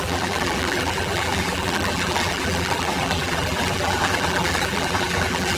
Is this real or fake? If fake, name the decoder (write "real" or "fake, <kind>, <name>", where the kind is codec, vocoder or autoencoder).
fake, vocoder, BigVGAN v2